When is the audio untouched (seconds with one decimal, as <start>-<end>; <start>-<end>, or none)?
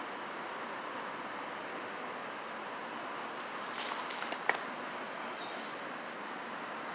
0.0-6.9